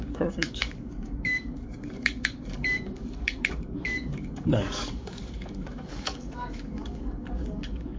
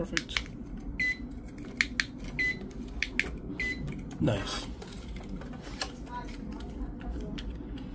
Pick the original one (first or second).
second